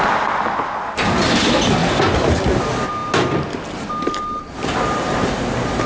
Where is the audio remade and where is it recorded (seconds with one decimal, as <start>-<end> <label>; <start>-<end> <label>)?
0.0-1.8 recorded; 1.8-2.3 remade; 2.3-5.9 recorded